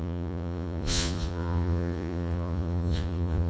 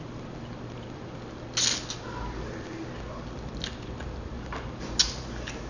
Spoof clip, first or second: first